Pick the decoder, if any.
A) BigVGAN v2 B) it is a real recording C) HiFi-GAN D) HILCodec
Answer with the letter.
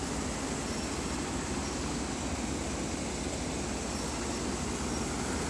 B